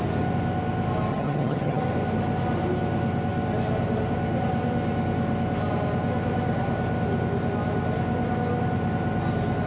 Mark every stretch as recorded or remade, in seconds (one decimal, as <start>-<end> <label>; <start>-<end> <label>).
0.0-1.1 recorded; 1.1-1.8 remade; 1.8-9.7 recorded